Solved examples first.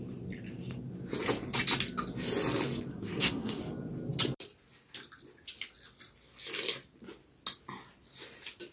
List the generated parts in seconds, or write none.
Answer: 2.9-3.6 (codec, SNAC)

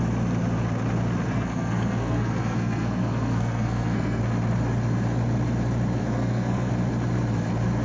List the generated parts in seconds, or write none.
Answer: 1.3-4.2 (codec, SNAC); 6.0-6.7

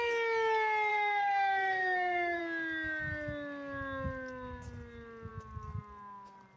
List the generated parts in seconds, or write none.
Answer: 0.9-2.4 (codec, SNAC)

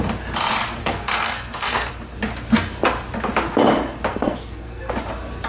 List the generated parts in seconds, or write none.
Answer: 0.8-1.9 (codec, SNAC); 4.1-4.9